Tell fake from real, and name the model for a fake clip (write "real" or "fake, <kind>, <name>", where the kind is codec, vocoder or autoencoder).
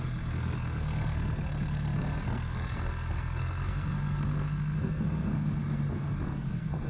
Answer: fake, codec, SNAC